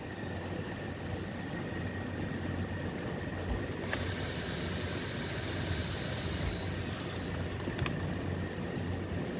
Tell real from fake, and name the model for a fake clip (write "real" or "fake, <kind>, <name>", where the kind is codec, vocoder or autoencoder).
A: real